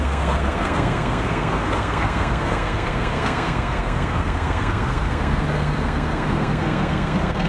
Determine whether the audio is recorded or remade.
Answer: remade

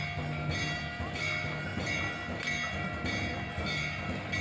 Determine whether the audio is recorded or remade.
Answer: recorded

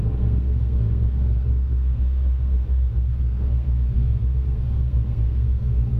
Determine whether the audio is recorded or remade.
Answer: remade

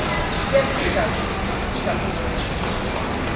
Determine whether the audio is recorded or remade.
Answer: recorded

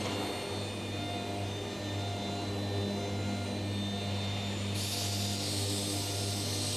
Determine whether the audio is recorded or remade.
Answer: recorded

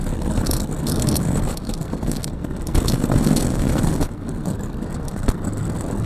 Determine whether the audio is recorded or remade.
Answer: remade